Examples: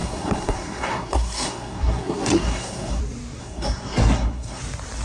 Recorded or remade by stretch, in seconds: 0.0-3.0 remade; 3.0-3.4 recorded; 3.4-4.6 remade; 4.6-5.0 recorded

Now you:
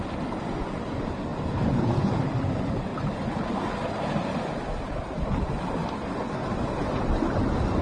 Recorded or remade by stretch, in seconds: 0.0-6.4 recorded; 6.4-7.0 remade; 7.0-7.8 recorded

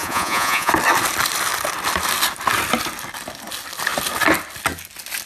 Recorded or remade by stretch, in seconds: 0.0-0.7 remade; 0.7-5.3 recorded

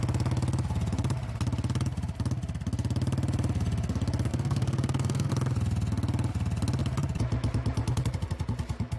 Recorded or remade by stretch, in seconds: 0.0-4.3 recorded; 4.3-5.3 remade; 5.3-9.0 recorded

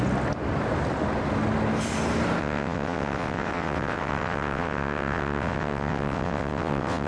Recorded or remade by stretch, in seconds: 0.0-2.4 recorded; 2.4-7.1 remade

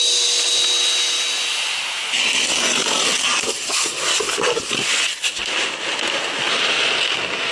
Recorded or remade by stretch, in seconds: 0.0-7.5 recorded